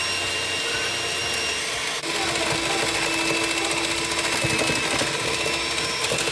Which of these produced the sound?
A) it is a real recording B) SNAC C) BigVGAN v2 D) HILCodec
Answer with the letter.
A